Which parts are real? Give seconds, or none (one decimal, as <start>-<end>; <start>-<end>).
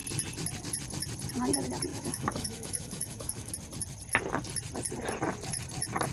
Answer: 0.0-1.9; 3.5-6.1